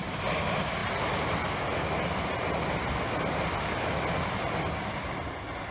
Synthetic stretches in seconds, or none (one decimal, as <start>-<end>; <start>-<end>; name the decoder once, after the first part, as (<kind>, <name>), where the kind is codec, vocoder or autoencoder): none